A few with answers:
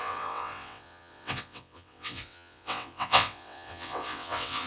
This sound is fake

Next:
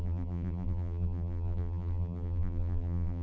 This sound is fake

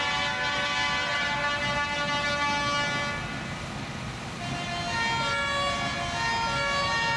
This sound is real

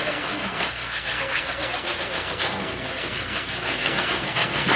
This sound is fake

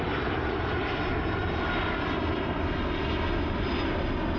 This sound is real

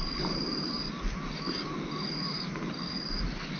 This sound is fake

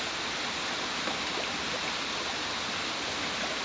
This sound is real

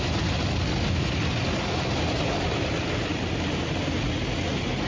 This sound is real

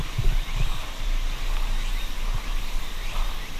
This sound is real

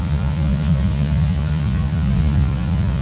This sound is fake